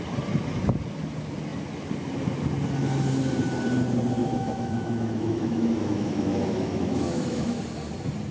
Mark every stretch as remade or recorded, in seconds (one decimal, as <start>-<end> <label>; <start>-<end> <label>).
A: 0.0-4.2 recorded; 4.2-7.6 remade; 7.6-8.3 recorded